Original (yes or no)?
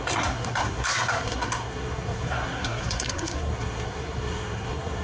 no